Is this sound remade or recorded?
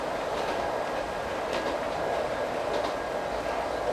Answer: recorded